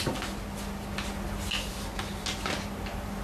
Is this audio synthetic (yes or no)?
no